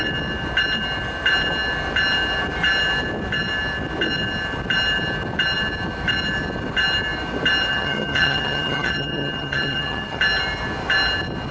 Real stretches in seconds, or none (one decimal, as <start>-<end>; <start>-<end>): 0.0-7.7; 10.2-11.5